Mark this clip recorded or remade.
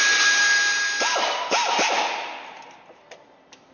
recorded